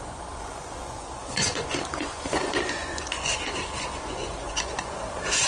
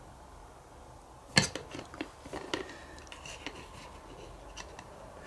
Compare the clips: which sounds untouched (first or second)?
second